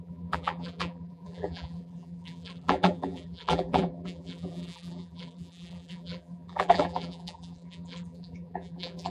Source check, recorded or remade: remade